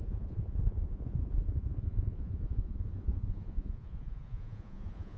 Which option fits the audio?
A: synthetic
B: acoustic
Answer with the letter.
A